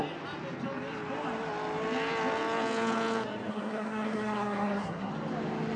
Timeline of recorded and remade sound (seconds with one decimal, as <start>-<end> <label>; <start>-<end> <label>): 0.0-3.5 recorded; 3.5-5.1 remade; 5.1-5.8 recorded